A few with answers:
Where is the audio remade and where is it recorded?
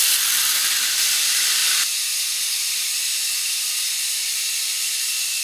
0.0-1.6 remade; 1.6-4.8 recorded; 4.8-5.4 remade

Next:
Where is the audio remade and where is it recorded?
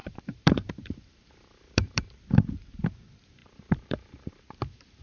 0.0-2.3 remade; 2.3-3.4 recorded; 3.4-4.4 remade; 4.4-5.0 recorded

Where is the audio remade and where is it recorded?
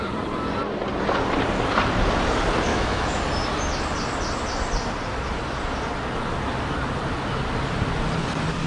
0.0-2.7 recorded; 2.7-3.2 remade; 3.2-8.7 recorded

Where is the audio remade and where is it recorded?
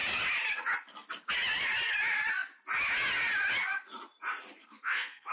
0.0-4.6 recorded; 4.6-5.3 remade